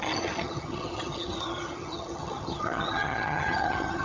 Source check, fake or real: fake